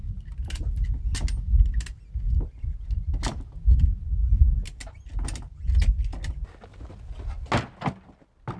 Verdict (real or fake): real